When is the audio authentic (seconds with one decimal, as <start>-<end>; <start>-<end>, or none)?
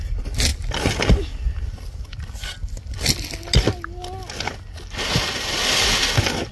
0.0-6.5